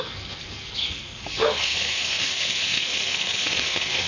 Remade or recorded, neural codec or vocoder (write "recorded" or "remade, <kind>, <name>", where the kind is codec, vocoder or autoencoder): remade, codec, SNAC